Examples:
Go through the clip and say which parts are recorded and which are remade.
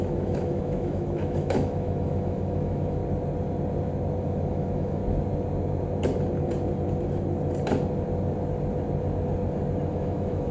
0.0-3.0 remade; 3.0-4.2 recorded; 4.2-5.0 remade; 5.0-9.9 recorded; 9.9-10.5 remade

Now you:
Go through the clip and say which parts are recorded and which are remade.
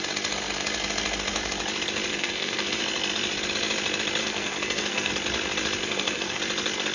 0.0-2.1 recorded; 2.1-2.8 remade; 2.8-4.2 recorded; 4.2-5.1 remade; 5.1-5.8 recorded; 5.8-6.4 remade; 6.4-6.9 recorded